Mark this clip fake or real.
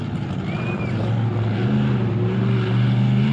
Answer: real